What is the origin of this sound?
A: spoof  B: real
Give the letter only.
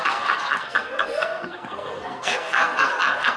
A